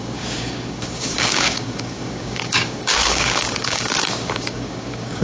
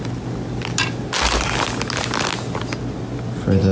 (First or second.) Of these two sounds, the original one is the second